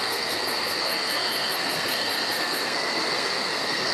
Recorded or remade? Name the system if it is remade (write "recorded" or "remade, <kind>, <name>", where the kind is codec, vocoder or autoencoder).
remade, codec, SNAC